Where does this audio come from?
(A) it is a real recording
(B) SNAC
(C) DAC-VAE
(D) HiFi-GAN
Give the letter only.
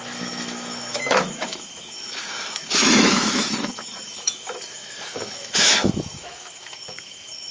C